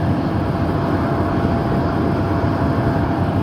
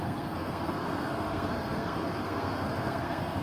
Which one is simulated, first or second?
second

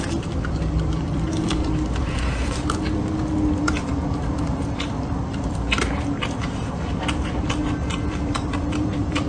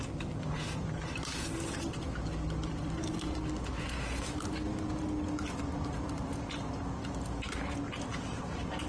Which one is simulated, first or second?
first